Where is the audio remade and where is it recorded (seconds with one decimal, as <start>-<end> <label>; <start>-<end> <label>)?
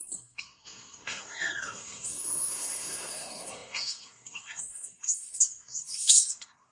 0.0-6.7 remade